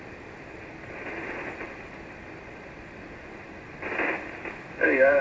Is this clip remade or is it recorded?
recorded